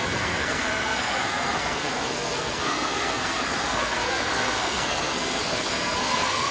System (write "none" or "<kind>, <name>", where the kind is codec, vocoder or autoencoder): codec, SNAC